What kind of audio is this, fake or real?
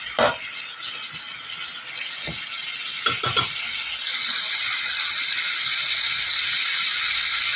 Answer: real